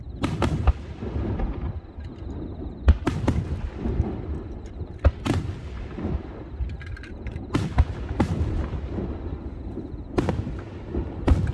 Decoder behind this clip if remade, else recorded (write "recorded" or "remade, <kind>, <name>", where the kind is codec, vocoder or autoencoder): recorded